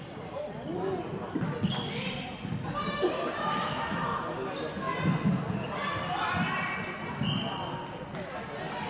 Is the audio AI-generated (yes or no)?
no